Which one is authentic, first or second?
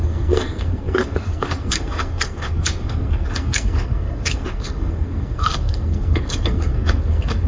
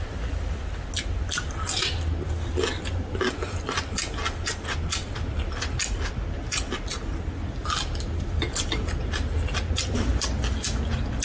second